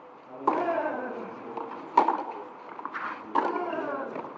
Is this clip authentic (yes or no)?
yes